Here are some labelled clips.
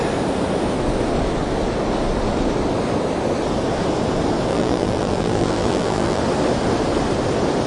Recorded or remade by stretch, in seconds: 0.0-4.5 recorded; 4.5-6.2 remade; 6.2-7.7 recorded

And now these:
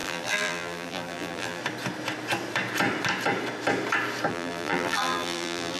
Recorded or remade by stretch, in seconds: 0.0-1.6 remade; 1.6-4.3 recorded; 4.3-5.8 remade

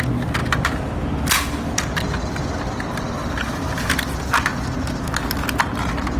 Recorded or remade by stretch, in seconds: 0.0-6.2 recorded

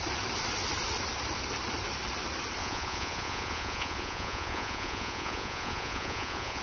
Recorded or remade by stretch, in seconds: 0.0-2.6 recorded; 2.6-6.6 remade